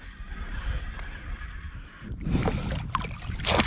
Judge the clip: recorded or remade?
recorded